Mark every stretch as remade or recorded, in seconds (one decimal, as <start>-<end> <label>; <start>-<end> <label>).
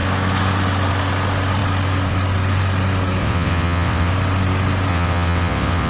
0.0-3.2 recorded; 3.2-4.1 remade; 4.1-4.9 recorded; 4.9-5.9 remade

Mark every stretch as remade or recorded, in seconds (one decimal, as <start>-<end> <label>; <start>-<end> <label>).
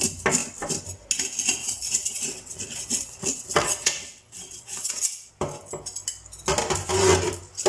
0.0-1.6 recorded; 1.6-5.3 remade; 5.3-7.7 recorded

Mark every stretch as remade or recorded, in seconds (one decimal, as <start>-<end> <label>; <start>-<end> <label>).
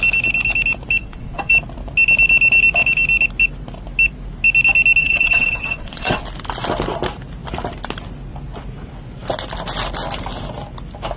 0.0-1.0 recorded; 1.0-1.5 remade; 1.5-5.0 recorded; 5.0-6.2 remade; 6.2-11.2 recorded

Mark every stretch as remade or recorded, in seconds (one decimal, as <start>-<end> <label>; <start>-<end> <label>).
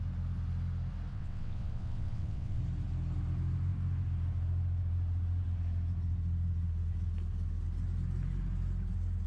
0.0-1.1 recorded; 1.1-2.6 remade; 2.6-9.3 recorded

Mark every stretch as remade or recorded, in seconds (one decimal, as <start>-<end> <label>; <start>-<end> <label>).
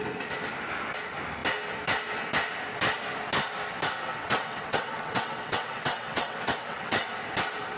0.0-4.1 recorded; 4.1-7.1 remade; 7.1-7.8 recorded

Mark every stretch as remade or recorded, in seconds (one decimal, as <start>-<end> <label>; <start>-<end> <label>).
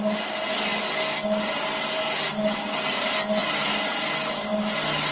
0.0-5.1 recorded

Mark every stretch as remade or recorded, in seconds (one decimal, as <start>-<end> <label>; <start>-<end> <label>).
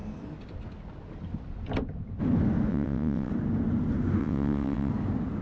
0.0-2.7 recorded; 2.7-3.3 remade; 3.3-4.2 recorded; 4.2-4.9 remade; 4.9-5.4 recorded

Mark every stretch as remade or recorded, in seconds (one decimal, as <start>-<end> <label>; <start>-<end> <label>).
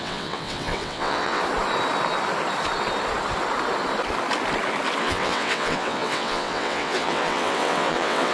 0.0-1.4 remade; 1.4-5.0 recorded; 5.0-8.3 remade